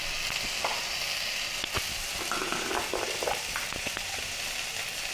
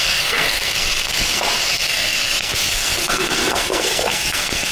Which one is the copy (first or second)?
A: second